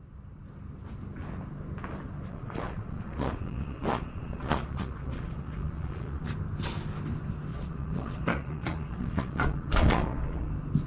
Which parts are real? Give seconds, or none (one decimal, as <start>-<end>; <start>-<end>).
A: 0.0-2.3; 6.3-7.5; 10.5-10.9